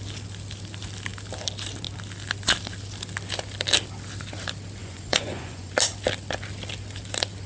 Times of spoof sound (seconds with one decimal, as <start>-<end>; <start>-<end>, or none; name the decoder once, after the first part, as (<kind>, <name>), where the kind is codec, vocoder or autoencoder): 4.8-5.7 (vocoder, Vocos)